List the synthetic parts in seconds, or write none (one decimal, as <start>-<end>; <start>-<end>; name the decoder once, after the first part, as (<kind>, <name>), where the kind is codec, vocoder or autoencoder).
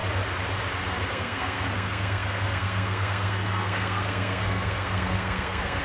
1.1-5.8 (codec, SNAC)